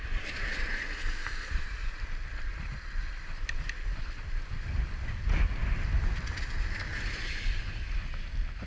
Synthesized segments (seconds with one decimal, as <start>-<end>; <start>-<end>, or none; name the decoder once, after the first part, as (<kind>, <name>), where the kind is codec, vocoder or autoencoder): 2.5-3.2 (vocoder, Vocos)